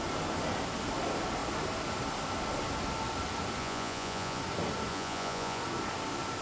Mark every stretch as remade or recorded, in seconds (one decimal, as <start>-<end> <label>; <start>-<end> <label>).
0.0-3.6 recorded; 3.6-4.4 remade; 4.4-4.9 recorded; 4.9-5.6 remade; 5.6-6.4 recorded